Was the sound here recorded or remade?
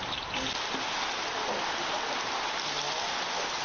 recorded